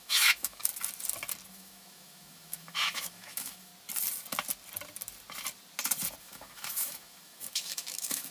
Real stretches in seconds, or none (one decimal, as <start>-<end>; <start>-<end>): 0.7-1.5; 3.7-6.2

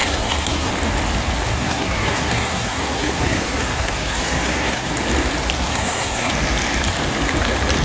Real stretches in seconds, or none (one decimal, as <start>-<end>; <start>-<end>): 0.7-1.5; 4.9-5.7; 6.3-7.8

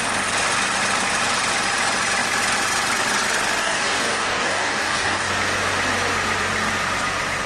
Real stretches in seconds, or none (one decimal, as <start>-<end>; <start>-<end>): 0.0-3.6; 5.3-7.5